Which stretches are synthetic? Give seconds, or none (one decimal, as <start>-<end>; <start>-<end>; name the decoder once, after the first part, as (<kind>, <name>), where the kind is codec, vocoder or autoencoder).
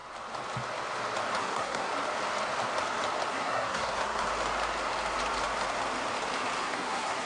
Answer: 1.4-1.9 (codec, SNAC); 3.3-4.3; 6.6-7.3